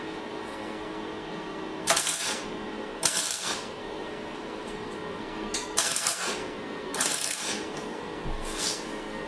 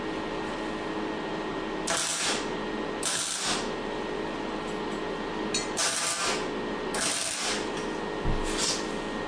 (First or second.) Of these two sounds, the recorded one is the second